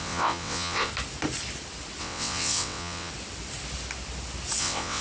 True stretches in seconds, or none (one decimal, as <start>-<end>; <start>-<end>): 0.9-2.0; 3.1-4.6